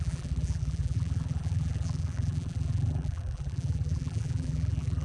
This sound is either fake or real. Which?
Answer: fake